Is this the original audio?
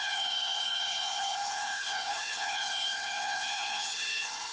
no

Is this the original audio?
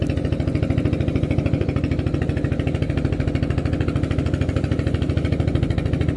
yes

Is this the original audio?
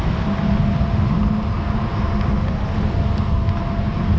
yes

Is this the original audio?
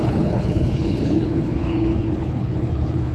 no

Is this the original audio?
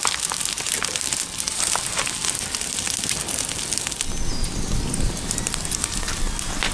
yes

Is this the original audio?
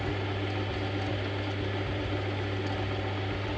yes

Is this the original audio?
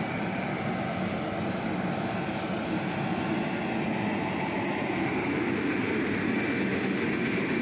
yes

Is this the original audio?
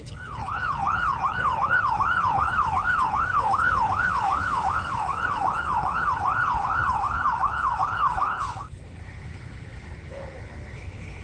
no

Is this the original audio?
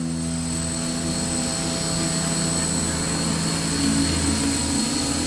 yes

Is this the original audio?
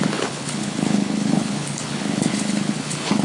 no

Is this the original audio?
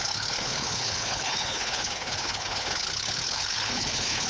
no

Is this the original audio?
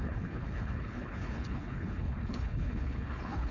no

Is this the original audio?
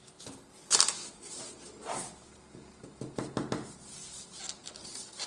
yes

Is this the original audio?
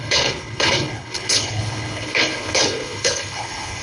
no